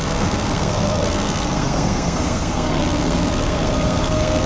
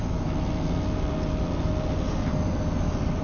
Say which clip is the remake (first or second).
first